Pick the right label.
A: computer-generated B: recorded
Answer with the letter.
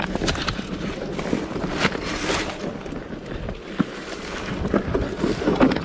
B